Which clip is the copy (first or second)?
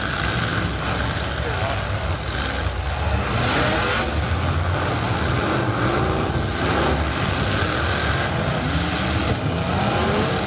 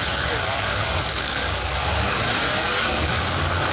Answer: second